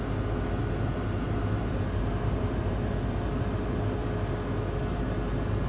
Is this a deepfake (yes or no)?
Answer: no